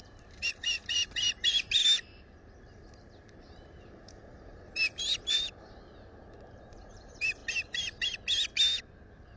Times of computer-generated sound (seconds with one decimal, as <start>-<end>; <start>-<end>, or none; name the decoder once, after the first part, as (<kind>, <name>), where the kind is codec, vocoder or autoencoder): 0.0-1.8 (vocoder, BigVGAN v2); 3.3-7.4; 8.8-9.4